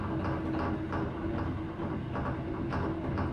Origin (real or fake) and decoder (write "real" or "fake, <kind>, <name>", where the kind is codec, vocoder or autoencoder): real